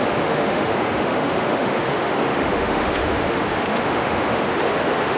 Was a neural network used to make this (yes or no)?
yes